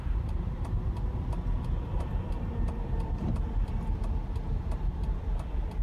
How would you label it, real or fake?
fake